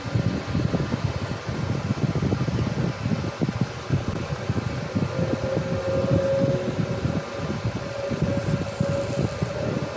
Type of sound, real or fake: real